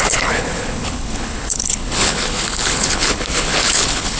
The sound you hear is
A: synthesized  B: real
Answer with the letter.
A